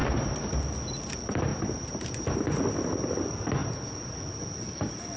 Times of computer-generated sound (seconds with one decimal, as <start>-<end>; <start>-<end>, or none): 0.0-0.6; 1.5-2.6; 3.6-4.2